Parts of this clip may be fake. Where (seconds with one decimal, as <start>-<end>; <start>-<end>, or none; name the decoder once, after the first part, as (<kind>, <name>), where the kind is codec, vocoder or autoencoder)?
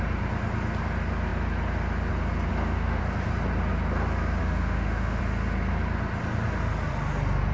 2.5-3.0 (autoencoder, DAC-VAE); 4.4-5.2